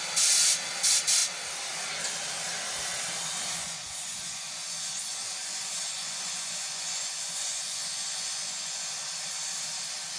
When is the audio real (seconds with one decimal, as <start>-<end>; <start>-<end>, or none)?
0.0-3.6; 8.9-10.2